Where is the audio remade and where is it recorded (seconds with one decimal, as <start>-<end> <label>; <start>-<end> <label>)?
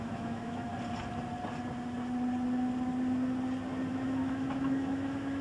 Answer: 0.0-0.7 remade; 0.7-3.9 recorded; 3.9-5.4 remade